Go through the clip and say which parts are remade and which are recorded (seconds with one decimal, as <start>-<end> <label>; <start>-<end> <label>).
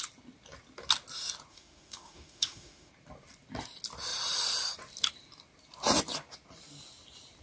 0.0-1.5 recorded; 1.5-2.9 remade; 2.9-7.4 recorded